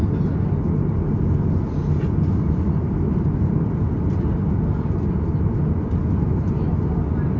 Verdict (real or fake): real